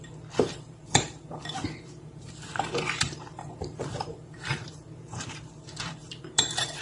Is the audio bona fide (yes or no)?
no